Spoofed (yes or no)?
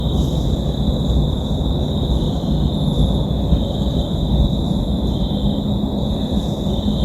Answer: no